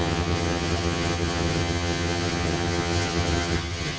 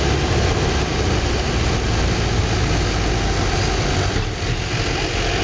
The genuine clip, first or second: second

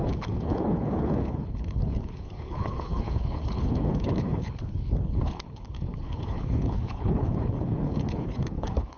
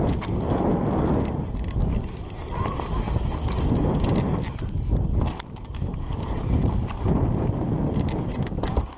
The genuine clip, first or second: second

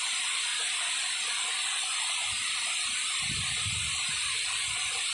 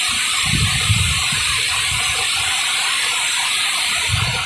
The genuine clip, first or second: first